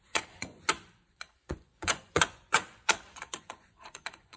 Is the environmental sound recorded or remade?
remade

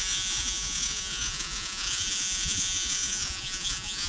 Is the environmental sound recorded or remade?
remade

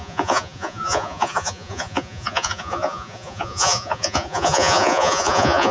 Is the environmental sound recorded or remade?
remade